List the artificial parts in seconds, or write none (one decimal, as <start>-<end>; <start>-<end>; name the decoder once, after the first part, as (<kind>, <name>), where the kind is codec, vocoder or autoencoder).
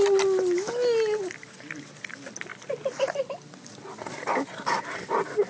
none